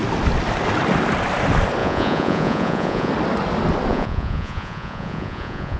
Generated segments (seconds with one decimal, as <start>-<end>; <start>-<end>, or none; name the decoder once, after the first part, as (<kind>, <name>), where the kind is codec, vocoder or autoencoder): 1.8-3.1 (vocoder, Vocos); 3.9-5.8